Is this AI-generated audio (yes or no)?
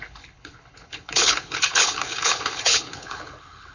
yes